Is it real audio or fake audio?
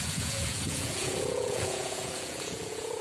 fake